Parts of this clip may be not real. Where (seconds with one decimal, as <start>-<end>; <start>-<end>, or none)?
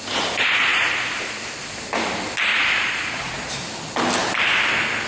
0.7-1.3; 2.5-3.5